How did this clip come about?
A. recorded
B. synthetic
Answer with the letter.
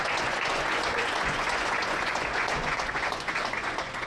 B